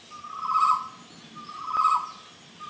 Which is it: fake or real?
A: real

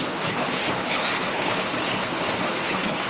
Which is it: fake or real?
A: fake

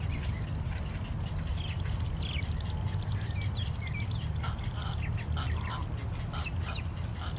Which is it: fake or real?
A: real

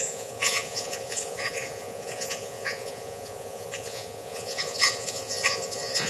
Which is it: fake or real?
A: fake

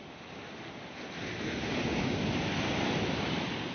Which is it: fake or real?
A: real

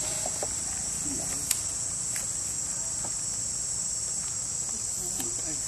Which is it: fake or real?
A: real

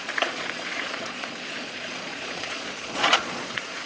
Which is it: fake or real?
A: fake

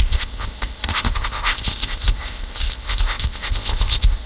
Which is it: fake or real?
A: fake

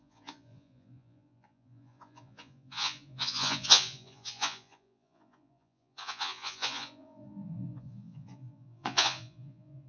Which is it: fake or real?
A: fake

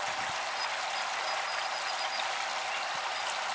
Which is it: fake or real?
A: real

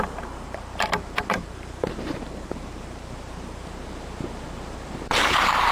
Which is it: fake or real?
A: fake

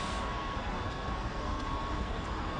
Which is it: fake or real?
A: fake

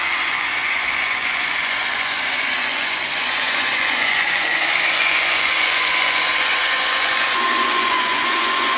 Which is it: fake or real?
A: fake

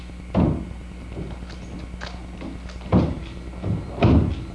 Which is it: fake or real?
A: real